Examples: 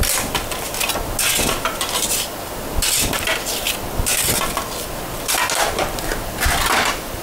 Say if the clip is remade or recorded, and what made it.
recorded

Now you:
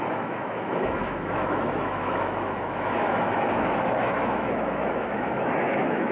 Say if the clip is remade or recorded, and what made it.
remade, autoencoder, DAC-VAE